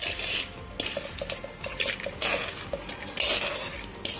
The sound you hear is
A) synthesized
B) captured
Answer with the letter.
B